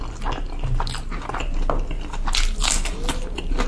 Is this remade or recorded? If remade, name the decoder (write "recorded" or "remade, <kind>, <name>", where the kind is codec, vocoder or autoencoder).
recorded